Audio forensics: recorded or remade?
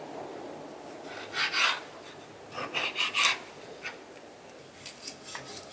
recorded